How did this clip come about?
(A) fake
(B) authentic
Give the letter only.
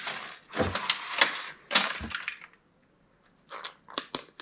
B